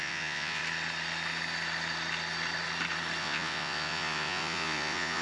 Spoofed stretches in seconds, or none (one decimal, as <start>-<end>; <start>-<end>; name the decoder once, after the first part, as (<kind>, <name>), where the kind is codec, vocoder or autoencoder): 0.0-0.6 (vocoder, Vocos); 3.2-5.2